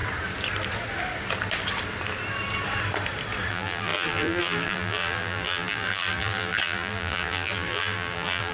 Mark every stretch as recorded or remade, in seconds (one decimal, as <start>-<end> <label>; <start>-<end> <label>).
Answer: 0.0-3.5 recorded; 3.5-8.5 remade